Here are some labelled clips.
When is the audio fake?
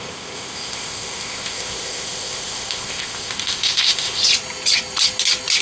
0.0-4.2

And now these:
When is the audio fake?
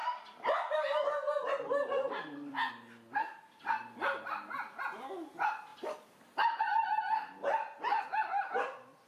none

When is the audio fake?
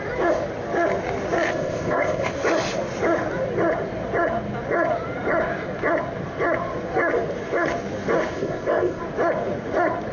1.5-2.3; 8.3-9.0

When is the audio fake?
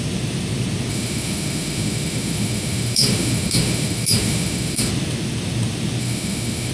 0.9-4.9; 6.0-6.7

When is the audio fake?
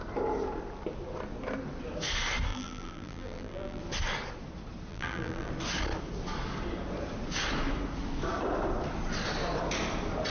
2.5-3.8; 4.9-5.5